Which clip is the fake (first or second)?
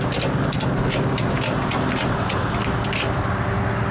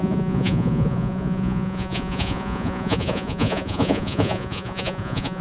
second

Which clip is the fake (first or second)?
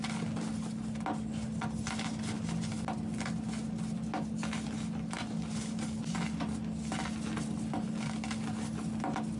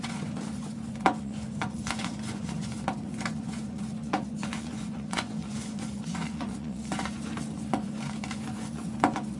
second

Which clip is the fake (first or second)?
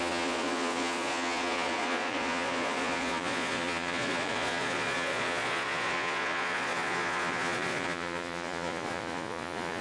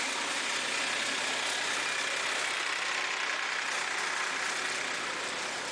first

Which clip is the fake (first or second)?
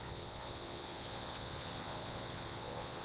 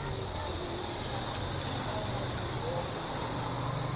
first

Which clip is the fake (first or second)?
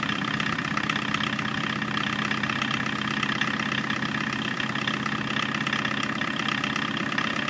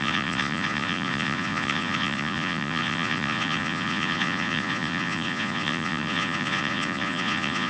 second